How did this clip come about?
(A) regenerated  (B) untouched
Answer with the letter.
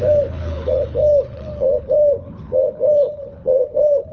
A